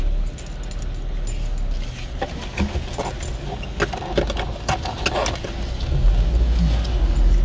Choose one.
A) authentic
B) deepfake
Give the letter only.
A